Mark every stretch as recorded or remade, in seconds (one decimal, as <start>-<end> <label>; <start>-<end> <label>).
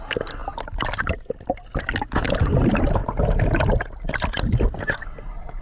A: 0.0-5.6 recorded